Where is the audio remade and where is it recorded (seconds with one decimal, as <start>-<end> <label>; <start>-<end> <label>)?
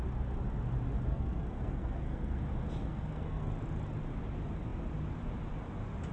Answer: 0.0-1.1 recorded; 1.1-2.4 remade; 2.4-2.8 recorded; 2.8-3.5 remade; 3.5-6.1 recorded